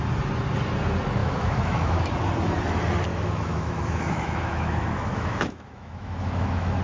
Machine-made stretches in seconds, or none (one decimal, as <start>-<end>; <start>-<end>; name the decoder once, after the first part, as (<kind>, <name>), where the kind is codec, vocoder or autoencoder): 1.2-2.0 (autoencoder, DAC-VAE); 3.1-6.8